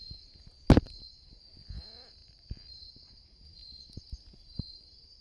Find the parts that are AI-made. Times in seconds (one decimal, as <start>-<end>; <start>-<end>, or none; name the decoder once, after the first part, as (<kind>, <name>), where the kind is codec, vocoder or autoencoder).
2.2-2.9 (vocoder, BigVGAN v2)